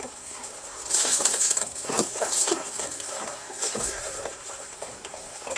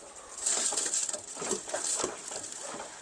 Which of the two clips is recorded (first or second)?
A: second